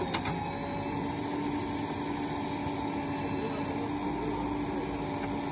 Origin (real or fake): real